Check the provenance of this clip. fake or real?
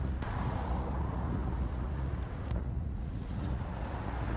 fake